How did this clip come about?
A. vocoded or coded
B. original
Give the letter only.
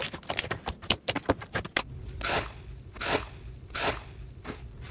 B